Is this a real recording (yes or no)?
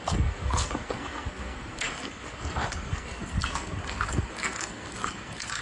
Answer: no